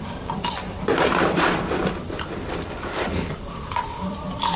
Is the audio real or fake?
fake